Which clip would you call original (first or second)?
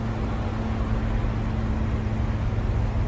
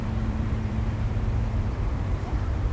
first